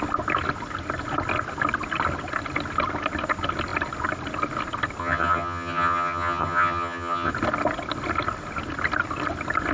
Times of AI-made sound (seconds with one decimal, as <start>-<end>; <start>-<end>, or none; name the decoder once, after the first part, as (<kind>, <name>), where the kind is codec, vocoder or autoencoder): 5.0-7.3 (vocoder, HiFi-GAN)